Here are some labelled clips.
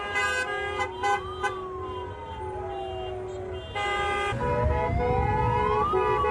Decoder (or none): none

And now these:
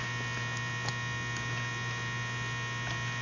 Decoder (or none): none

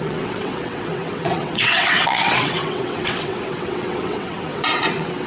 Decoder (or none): vocoder, WaveNeXt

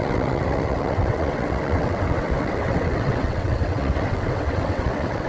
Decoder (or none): vocoder, WaveNeXt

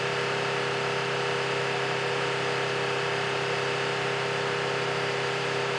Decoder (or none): none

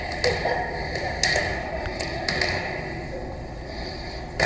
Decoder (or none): none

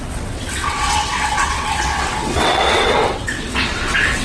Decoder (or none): vocoder, WaveNeXt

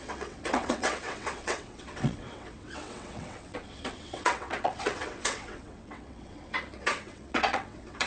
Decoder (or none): vocoder, WaveNeXt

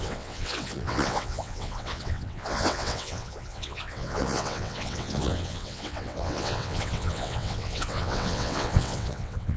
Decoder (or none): vocoder, WaveNeXt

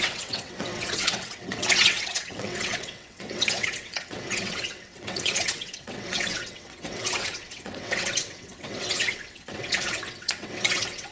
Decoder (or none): vocoder, WaveNeXt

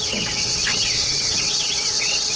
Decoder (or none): vocoder, WaveNeXt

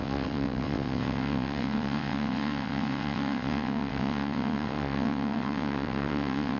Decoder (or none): vocoder, WaveNeXt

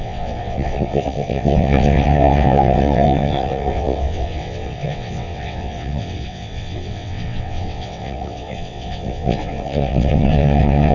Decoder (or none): vocoder, WaveNeXt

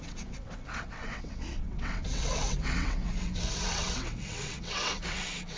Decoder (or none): vocoder, WaveNeXt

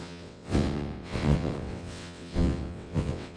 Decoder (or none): vocoder, WaveNeXt